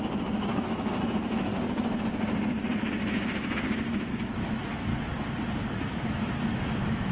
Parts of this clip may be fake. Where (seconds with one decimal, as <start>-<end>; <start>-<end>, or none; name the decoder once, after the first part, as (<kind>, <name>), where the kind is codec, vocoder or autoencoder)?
0.0-1.5 (autoencoder, DAC-VAE); 4.1-4.9; 6.1-7.1